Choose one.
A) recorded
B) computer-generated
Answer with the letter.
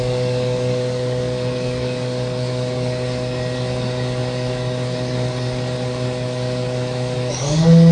B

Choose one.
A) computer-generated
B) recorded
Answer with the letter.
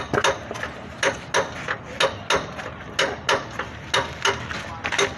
B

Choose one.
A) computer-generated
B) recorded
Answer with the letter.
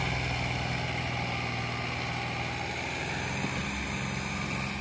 B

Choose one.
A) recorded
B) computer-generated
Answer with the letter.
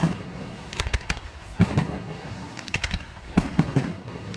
B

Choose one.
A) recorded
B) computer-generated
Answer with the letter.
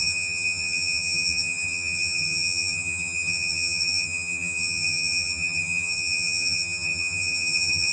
B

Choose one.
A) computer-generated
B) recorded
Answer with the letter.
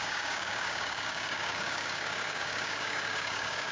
A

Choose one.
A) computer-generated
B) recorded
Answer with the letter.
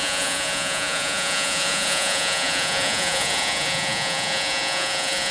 A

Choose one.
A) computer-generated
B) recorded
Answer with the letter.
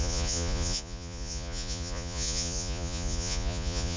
A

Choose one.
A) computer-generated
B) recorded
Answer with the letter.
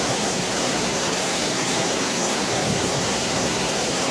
A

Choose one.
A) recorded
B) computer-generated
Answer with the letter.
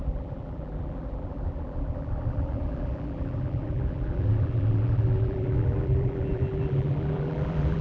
B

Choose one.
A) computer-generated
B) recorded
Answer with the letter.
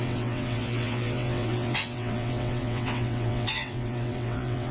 A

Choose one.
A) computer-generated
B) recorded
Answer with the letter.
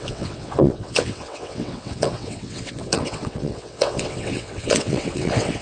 A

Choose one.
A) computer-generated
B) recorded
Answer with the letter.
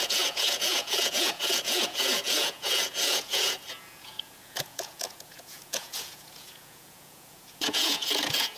A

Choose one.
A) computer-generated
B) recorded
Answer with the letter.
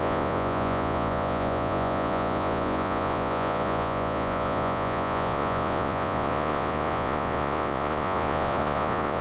A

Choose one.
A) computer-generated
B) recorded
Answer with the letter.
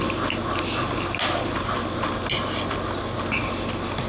B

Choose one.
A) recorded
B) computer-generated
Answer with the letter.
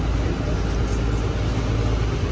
A